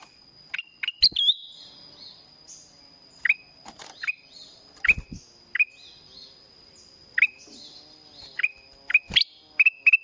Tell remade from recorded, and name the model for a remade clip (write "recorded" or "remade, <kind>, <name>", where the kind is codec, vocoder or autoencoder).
recorded